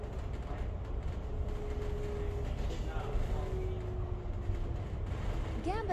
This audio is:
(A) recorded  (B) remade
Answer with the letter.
A